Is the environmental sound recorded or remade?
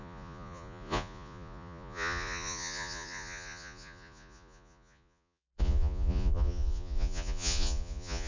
remade